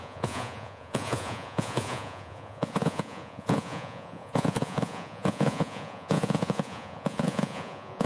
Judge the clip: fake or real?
fake